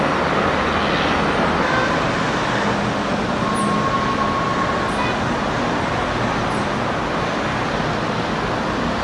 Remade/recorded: recorded